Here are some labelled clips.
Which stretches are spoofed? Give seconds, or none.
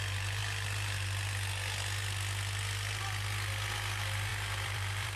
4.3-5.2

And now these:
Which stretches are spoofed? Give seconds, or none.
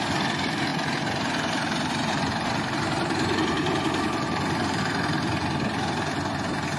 0.7-4.8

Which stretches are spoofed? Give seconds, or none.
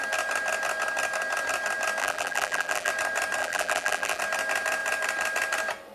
2.0-2.9; 3.4-4.2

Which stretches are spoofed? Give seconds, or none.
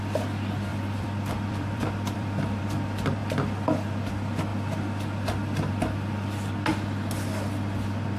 0.7-2.6